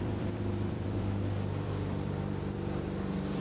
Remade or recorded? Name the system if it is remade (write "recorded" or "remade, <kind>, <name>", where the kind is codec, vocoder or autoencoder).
remade, vocoder, BigVGAN v2